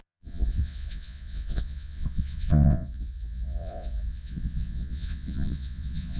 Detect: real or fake fake